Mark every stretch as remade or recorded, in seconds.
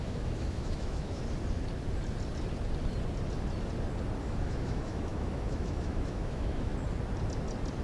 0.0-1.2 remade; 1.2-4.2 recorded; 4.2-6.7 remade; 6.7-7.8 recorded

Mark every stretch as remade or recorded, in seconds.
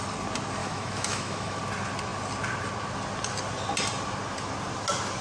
0.0-0.6 recorded; 0.6-1.6 remade; 1.6-5.2 recorded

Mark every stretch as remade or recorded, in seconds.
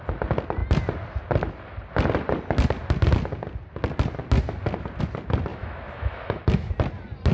0.0-5.5 recorded; 5.5-6.7 remade; 6.7-7.3 recorded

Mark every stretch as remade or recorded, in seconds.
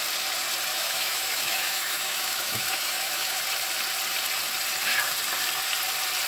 0.0-0.7 recorded; 0.7-3.4 remade; 3.4-6.3 recorded